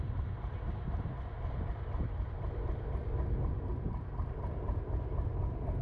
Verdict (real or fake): fake